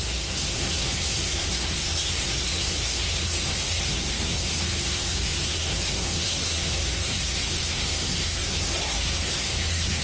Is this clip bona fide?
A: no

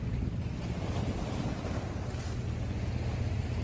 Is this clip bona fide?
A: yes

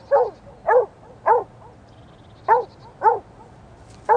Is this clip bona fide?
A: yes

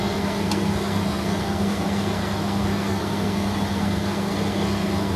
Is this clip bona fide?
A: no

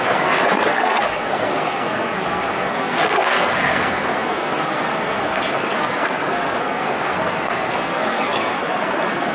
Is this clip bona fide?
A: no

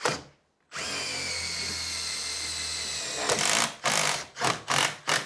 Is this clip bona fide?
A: yes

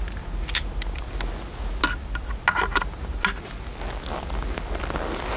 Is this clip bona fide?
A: yes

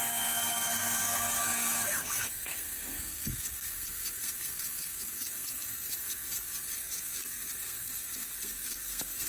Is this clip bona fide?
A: no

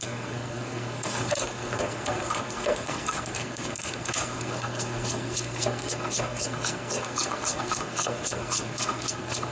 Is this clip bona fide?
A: no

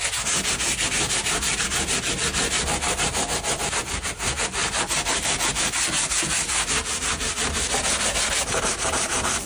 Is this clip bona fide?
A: yes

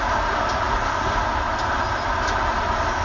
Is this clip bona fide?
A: yes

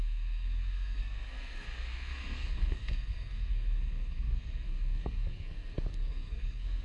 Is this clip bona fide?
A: no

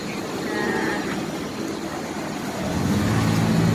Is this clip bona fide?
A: yes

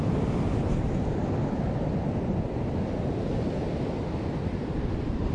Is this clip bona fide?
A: yes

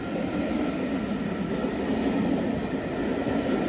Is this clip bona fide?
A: yes